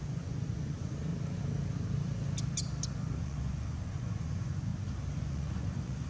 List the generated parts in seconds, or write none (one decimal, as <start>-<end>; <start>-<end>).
0.0-1.1; 3.2-4.7; 5.2-6.1